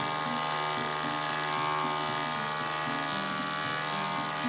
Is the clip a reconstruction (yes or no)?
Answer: no